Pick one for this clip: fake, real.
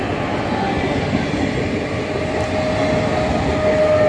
real